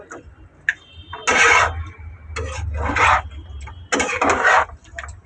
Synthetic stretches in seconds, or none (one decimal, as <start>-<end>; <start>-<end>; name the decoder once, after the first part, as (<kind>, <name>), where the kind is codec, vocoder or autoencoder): none